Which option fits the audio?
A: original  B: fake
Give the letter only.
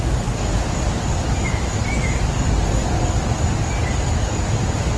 A